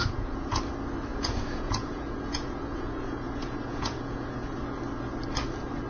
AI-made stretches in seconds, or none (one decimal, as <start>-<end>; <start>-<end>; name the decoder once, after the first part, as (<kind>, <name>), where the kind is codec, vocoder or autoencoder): 0.0-0.6 (vocoder, Vocos); 1.1-4.6